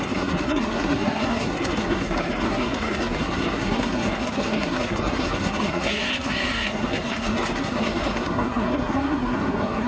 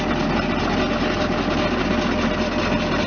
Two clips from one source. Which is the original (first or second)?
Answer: second